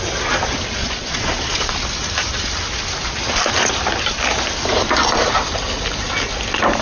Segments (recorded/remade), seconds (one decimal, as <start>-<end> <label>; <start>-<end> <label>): 0.0-0.8 recorded; 0.8-1.7 remade; 1.7-6.8 recorded